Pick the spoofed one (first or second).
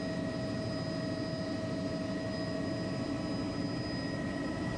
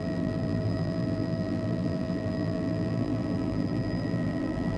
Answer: second